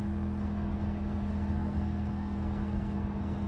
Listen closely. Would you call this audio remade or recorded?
remade